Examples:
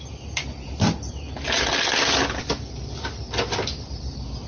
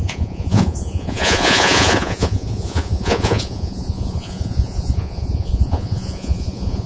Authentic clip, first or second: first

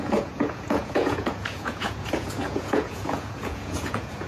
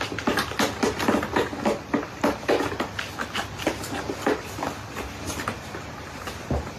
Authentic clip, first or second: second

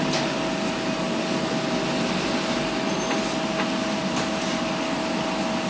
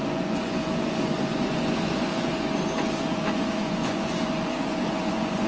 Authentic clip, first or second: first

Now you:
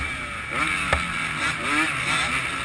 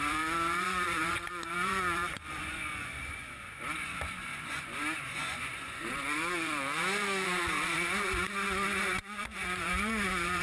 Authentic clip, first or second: first